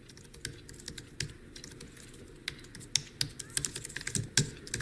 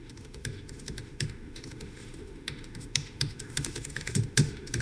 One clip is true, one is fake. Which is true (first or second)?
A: first